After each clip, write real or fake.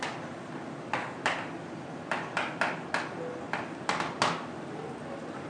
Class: real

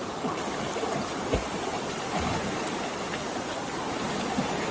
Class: real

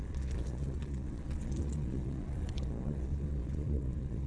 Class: fake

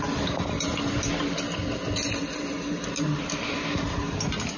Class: real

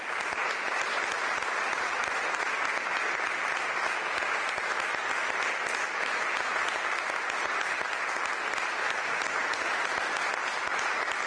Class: real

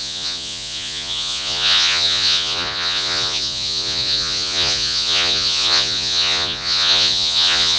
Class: fake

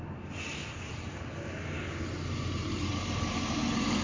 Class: real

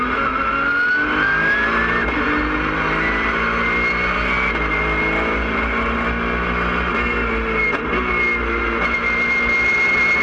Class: real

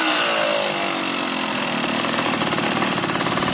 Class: real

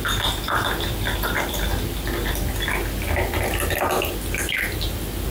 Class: real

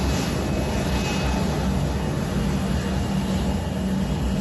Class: real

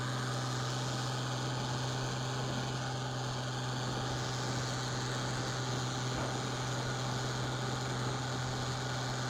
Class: real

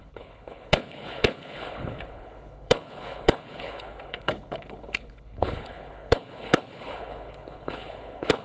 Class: fake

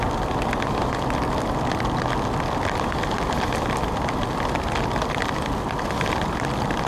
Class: real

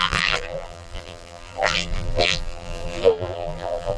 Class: fake